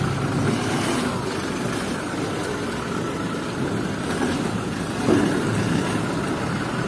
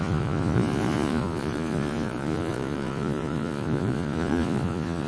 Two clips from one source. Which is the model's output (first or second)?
second